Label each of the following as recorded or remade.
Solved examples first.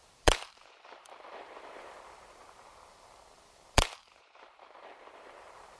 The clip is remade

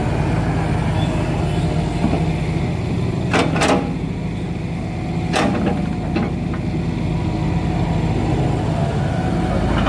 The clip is recorded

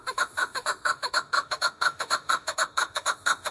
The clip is remade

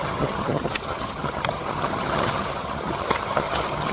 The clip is remade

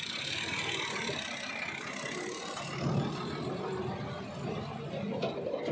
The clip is recorded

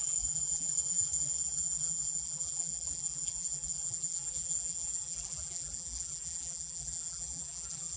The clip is remade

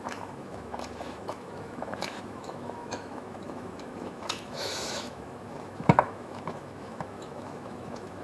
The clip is remade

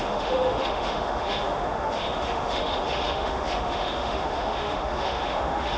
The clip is remade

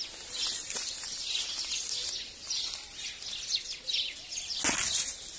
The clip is recorded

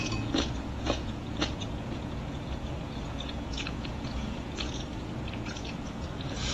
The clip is remade